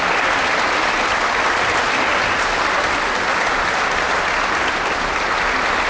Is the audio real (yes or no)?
yes